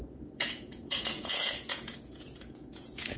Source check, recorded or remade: remade